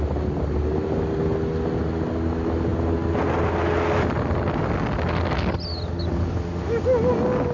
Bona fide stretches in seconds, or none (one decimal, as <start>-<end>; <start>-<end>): 0.0-7.5